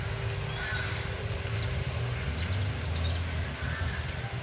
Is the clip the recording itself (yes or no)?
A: yes